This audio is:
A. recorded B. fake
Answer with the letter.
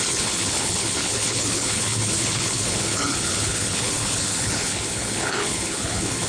B